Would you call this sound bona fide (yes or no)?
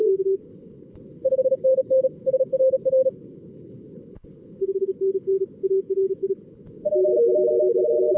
no